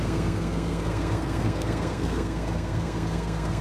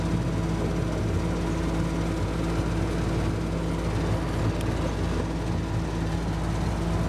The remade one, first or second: first